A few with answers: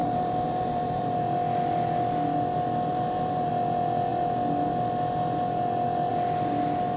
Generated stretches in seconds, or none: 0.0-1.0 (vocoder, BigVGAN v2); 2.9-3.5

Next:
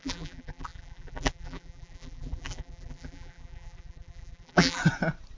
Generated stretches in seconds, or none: 0.0-4.8 (vocoder, BigVGAN v2)

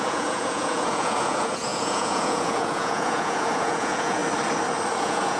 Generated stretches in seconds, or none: 0.0-4.2 (vocoder, Vocos); 5.0-5.4

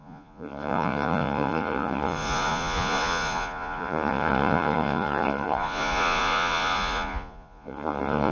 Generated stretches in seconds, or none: 0.0-8.3 (vocoder, Vocos)

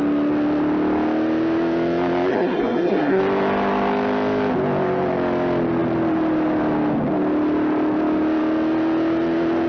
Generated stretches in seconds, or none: 2.3-3.2 (codec, SNAC)

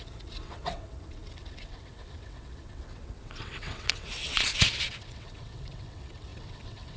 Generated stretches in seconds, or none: 0.0-7.0 (vocoder, WaveNeXt)